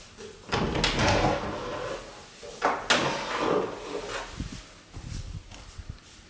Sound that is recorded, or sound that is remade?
recorded